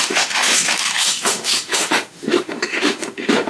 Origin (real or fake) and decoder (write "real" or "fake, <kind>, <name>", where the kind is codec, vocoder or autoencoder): fake, autoencoder, DAC-VAE